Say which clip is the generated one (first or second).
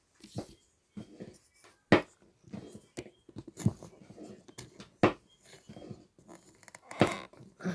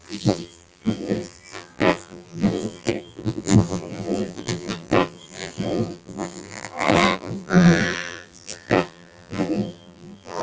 second